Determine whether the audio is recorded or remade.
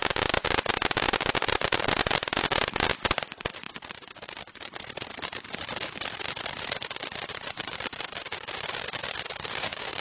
recorded